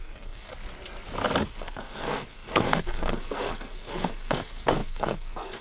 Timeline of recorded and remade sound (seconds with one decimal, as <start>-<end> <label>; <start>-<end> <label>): 0.0-0.5 remade; 0.5-1.4 recorded; 1.4-5.6 remade